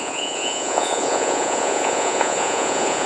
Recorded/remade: remade